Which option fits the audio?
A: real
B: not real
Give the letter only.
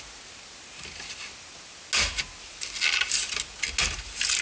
A